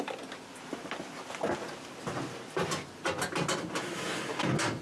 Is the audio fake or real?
real